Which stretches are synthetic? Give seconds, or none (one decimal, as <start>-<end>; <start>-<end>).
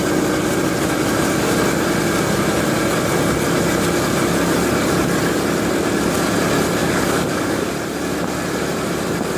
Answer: 6.8-7.7